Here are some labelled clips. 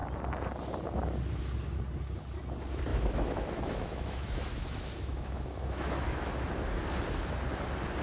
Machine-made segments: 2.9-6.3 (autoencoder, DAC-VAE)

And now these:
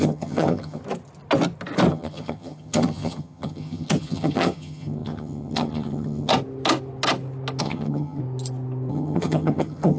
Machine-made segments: 0.0-0.8 (vocoder, HiFi-GAN); 1.9-6.3; 7.6-8.2; 8.9-10.0

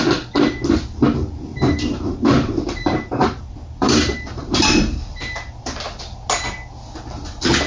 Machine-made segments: 1.5-6.0 (vocoder, BigVGAN v2)

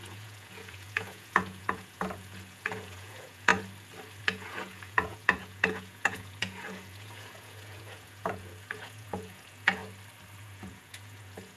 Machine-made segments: 0.0-3.5 (vocoder, Vocos); 4.2-9.8; 10.4-11.6

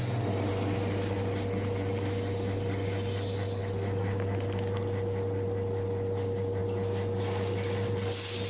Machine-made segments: none

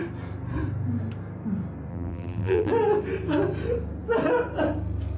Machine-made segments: 1.9-2.7 (vocoder, BigVGAN v2)